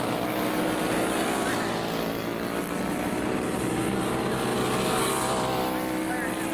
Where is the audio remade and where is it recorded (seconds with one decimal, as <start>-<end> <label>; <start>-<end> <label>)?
0.0-6.5 recorded